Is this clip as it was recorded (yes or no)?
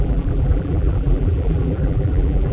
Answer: no